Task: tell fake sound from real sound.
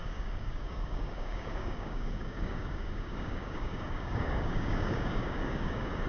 fake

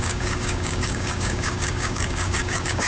fake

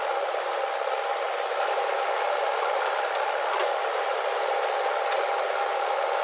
real